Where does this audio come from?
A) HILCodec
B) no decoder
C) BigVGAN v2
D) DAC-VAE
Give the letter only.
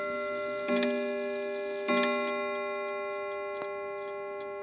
B